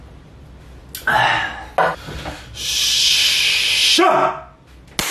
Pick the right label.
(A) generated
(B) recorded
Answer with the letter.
B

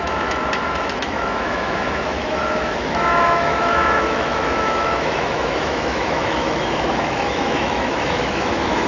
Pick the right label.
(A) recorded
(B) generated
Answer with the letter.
B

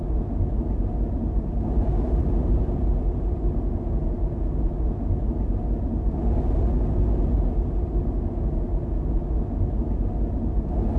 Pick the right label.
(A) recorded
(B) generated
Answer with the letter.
A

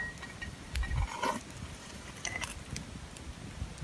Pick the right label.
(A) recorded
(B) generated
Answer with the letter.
A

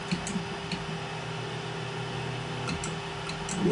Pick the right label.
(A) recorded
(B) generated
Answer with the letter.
A